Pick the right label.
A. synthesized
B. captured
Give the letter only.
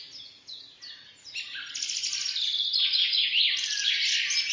B